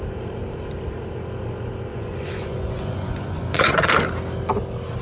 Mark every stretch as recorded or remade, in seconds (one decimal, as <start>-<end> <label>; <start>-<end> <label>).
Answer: 0.0-1.9 recorded; 1.9-3.9 remade; 3.9-5.0 recorded